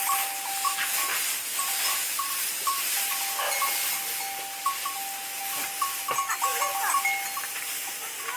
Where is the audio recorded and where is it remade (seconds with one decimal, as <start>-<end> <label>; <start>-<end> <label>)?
0.0-2.0 recorded; 2.0-3.1 remade; 3.1-8.4 recorded